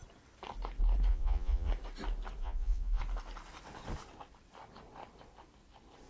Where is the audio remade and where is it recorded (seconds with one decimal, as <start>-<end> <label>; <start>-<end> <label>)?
0.0-1.1 recorded; 1.1-1.7 remade; 1.7-2.4 recorded; 2.4-3.0 remade; 3.0-6.1 recorded